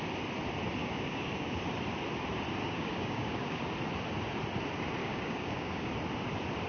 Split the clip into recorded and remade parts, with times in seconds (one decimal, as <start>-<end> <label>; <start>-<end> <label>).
0.0-0.8 recorded; 0.8-1.5 remade; 1.5-2.6 recorded; 2.6-3.6 remade; 3.6-5.0 recorded; 5.0-5.9 remade; 5.9-6.7 recorded